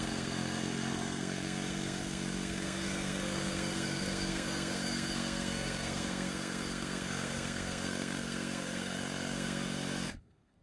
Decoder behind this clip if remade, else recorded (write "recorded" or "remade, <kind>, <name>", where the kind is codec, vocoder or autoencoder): remade, codec, SNAC